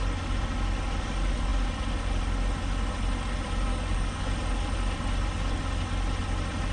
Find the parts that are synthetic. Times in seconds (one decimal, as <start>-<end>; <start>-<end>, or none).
3.7-4.3